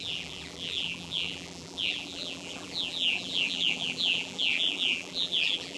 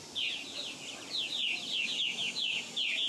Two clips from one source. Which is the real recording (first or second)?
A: second